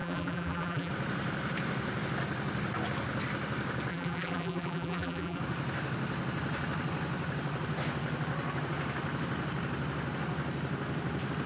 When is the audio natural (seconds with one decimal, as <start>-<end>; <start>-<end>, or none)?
0.9-3.9; 5.4-11.5